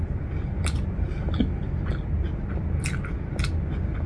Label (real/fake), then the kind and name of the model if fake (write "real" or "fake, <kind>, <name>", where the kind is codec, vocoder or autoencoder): real